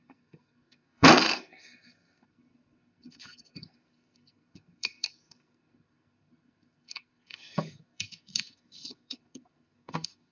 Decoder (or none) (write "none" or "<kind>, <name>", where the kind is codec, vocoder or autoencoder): codec, SNAC